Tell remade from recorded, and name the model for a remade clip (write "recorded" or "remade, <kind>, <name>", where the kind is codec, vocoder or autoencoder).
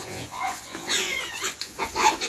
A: remade, vocoder, Vocos